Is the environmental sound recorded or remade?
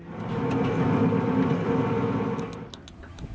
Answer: recorded